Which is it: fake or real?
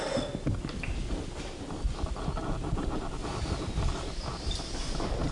real